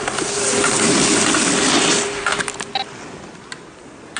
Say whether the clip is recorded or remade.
recorded